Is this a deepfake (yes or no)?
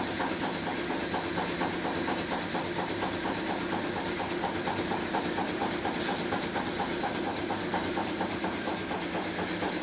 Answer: no